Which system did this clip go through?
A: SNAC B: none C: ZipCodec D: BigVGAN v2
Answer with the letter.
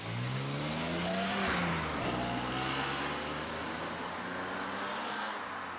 B